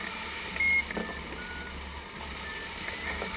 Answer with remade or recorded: recorded